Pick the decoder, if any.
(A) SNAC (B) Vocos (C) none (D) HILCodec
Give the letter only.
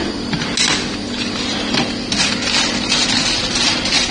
C